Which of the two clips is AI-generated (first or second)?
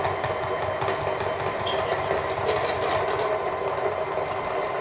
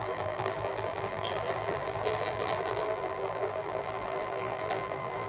second